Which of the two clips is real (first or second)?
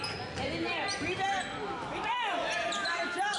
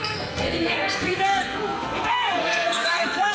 first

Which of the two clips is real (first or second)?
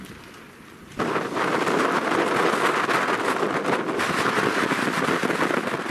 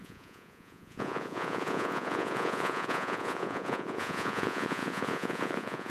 first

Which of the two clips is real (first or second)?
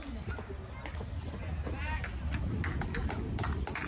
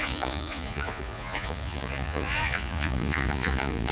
first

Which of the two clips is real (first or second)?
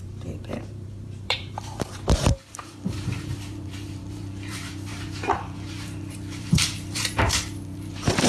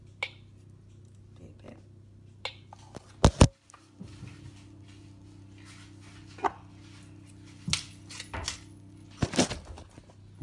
second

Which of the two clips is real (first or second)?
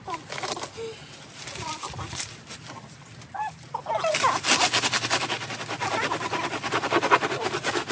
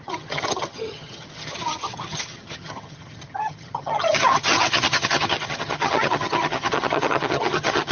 first